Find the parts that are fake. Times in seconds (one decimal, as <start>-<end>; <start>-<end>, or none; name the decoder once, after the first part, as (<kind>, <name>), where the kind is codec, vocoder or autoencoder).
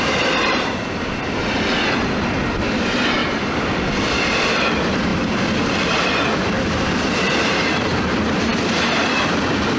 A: 0.0-8.5 (vocoder, BigVGAN v2); 9.0-9.8